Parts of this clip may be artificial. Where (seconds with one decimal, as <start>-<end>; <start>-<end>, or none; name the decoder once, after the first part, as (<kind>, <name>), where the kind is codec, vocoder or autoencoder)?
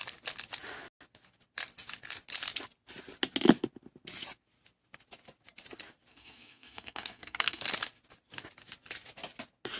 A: 6.1-7.6 (codec, SNAC)